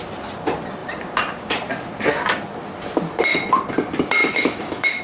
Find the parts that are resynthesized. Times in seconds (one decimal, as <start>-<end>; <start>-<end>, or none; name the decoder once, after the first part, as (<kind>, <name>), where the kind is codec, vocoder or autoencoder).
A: 4.2-5.0 (autoencoder, DAC-VAE)